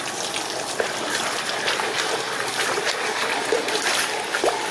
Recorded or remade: recorded